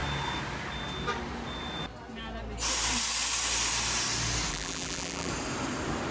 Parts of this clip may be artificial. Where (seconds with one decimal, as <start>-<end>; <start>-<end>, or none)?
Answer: 4.5-5.3